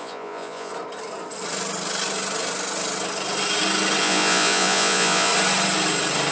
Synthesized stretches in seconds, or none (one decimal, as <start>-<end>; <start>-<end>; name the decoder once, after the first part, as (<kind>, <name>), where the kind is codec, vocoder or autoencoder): 0.0-0.7 (vocoder, Vocos); 4.0-5.3